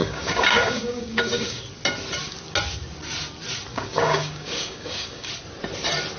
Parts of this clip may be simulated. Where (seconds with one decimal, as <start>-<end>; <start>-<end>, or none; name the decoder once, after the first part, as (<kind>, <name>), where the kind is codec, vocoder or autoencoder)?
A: 0.0-1.6 (codec, DAC); 3.7-5.3